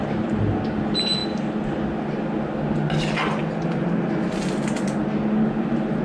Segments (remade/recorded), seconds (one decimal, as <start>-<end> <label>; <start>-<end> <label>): 0.0-6.0 recorded